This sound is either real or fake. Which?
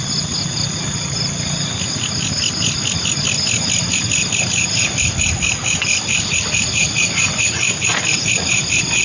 real